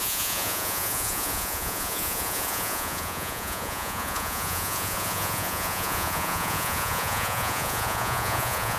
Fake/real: fake